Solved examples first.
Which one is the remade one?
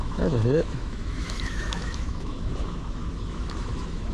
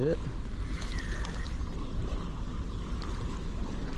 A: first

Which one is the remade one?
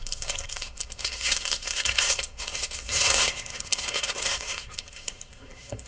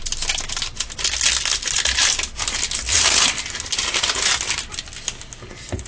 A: first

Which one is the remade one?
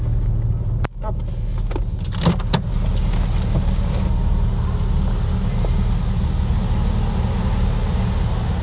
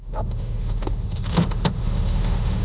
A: second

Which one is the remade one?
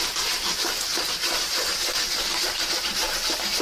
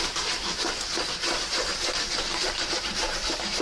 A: second